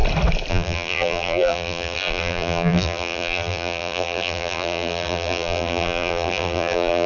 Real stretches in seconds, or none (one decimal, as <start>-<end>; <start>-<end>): 0.0-0.5